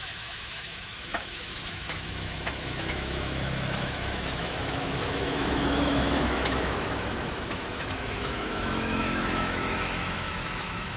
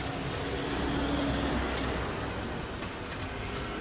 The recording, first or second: second